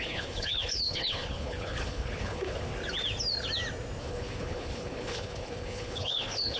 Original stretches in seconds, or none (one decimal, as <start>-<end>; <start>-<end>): 2.7-4.0